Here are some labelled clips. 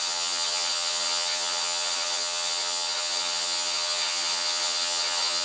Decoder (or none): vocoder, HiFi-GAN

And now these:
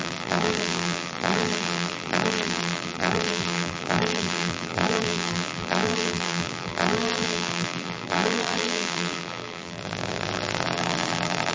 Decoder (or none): vocoder, BigVGAN v2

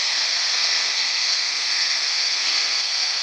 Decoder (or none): codec, SNAC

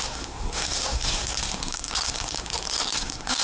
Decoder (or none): codec, SNAC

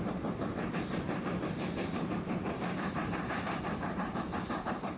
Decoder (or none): vocoder, BigVGAN v2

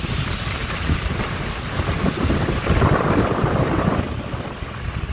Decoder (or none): none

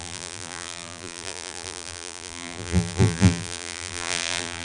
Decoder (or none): vocoder, BigVGAN v2